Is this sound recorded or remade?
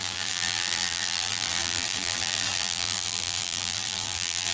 remade